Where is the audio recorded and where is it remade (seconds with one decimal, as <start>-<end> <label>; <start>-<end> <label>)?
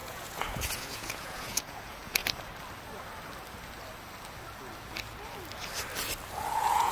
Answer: 0.0-2.2 remade; 2.2-6.3 recorded; 6.3-6.9 remade